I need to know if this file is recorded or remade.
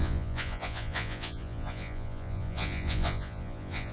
remade